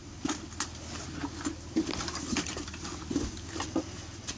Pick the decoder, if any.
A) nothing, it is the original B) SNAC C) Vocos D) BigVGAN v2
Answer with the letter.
A